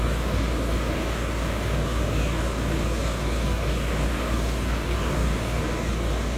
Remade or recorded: remade